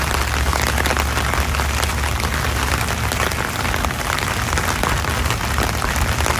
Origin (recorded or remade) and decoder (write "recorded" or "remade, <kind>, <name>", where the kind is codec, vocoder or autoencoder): recorded